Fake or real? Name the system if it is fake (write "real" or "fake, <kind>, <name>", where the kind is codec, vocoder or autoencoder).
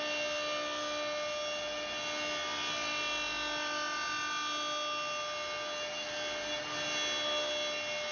real